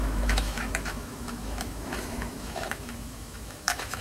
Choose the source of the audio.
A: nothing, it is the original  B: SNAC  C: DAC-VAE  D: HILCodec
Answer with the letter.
C